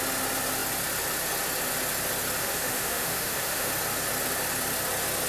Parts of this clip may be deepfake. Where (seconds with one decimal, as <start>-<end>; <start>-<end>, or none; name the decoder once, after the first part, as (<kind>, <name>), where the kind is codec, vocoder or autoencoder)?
2.4-3.7 (autoencoder, DAC-VAE)